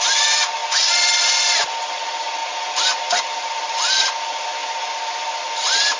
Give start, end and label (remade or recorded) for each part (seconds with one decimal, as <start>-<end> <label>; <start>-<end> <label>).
0.0-2.4 remade; 2.4-3.2 recorded; 3.2-6.0 remade